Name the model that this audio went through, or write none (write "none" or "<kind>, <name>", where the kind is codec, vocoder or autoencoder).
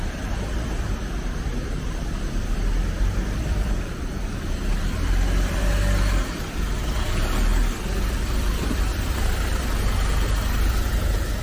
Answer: vocoder, BigVGAN v2